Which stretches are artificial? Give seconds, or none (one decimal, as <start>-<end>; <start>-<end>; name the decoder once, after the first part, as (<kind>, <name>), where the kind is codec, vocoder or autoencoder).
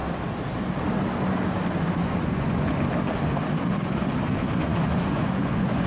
2.0-2.8 (vocoder, Vocos); 4.6-5.9